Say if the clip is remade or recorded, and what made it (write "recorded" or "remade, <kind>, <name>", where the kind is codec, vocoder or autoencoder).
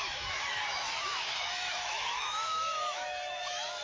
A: remade, autoencoder, DAC-VAE